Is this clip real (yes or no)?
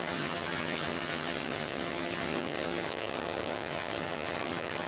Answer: no